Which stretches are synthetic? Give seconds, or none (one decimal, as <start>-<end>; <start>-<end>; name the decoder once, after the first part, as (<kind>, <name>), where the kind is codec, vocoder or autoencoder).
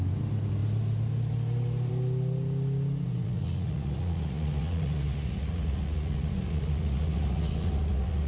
3.2-8.3 (vocoder, Vocos)